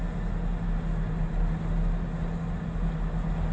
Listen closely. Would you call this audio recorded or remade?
recorded